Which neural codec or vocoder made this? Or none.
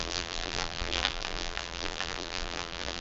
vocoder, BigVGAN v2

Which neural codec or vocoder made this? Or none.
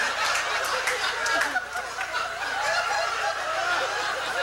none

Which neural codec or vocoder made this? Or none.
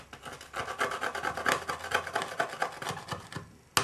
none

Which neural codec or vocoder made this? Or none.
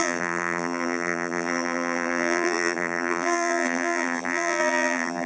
vocoder, BigVGAN v2